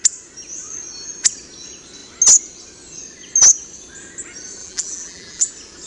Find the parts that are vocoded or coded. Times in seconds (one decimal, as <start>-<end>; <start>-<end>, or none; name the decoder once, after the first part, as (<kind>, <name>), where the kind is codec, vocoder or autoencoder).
4.6-5.5 (vocoder, BigVGAN v2)